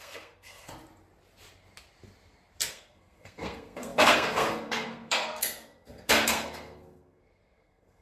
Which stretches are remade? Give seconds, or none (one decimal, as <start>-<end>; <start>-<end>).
0.0-0.7; 2.7-8.0